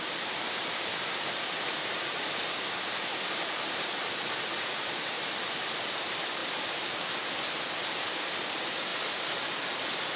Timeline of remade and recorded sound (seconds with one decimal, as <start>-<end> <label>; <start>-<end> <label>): 0.0-8.9 remade; 8.9-9.4 recorded; 9.4-10.2 remade